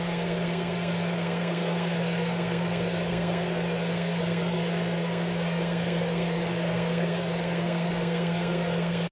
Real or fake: fake